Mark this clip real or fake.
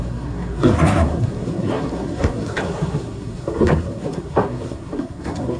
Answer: fake